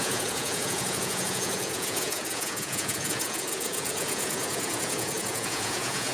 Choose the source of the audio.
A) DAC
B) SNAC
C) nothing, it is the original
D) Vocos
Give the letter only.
D